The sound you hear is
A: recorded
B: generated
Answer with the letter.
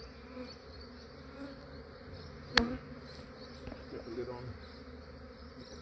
A